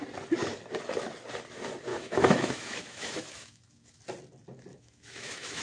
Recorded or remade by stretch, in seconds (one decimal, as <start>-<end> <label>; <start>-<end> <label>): 0.0-1.9 recorded; 1.9-4.0 remade; 4.0-4.7 recorded; 4.7-5.6 remade